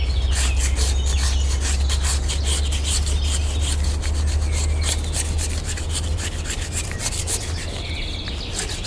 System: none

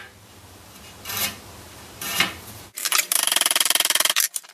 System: vocoder, BigVGAN v2